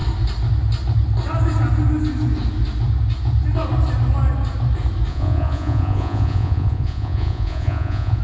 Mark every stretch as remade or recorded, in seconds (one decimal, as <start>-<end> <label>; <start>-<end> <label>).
0.0-5.1 recorded; 5.1-8.2 remade